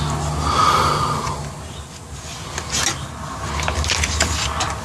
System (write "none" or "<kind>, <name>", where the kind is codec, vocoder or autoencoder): none